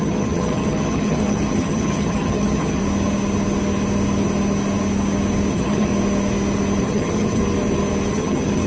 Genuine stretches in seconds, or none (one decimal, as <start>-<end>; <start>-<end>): 2.8-5.5; 5.9-6.8; 7.4-8.1